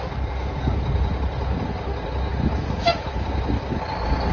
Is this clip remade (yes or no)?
no